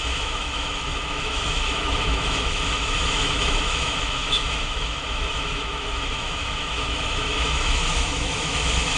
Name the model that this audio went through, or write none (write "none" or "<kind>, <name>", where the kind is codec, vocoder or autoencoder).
autoencoder, DAC-VAE